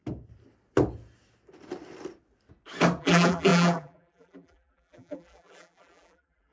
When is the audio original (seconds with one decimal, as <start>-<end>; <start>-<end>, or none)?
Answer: 0.0-3.0